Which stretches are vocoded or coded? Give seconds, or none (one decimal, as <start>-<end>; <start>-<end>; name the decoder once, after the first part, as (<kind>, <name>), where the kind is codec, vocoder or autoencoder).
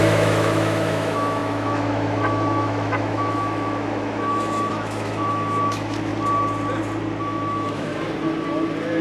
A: 0.0-6.1 (autoencoder, DAC-VAE); 7.2-7.9